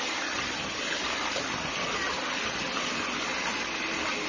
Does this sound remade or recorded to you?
recorded